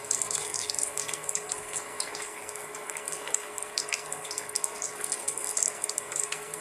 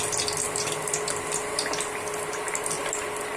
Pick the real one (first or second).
second